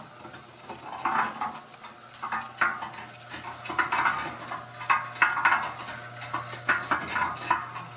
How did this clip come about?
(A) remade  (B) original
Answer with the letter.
B